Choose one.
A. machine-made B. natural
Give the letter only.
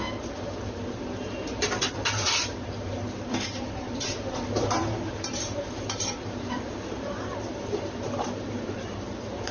A